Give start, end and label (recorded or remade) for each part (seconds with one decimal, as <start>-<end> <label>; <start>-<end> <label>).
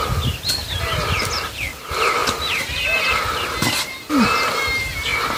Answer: 0.0-2.2 recorded; 2.2-4.1 remade; 4.1-5.4 recorded